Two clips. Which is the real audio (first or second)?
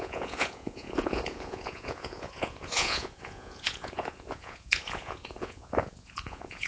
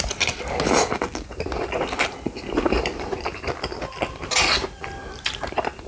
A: second